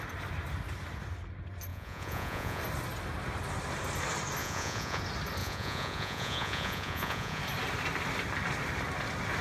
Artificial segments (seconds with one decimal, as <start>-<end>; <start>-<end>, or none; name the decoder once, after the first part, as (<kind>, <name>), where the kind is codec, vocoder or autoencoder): 1.7-2.6 (vocoder, Vocos); 4.4-5.0; 5.4-7.4